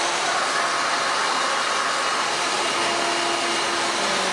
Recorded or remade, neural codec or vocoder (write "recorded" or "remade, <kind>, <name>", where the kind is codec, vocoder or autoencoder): recorded